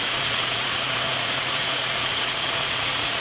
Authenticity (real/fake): fake